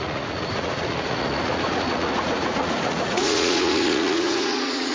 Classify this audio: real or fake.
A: fake